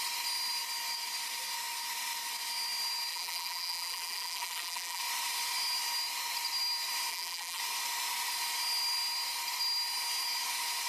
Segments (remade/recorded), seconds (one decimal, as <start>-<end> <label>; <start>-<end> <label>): 0.0-3.1 recorded; 3.1-5.0 remade; 5.0-7.1 recorded; 7.1-7.6 remade; 7.6-10.9 recorded